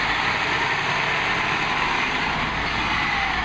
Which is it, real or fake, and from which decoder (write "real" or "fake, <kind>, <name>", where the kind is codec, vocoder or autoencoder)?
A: real